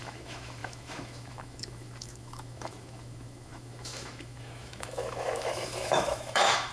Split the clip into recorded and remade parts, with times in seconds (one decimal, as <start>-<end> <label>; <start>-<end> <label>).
0.0-6.7 remade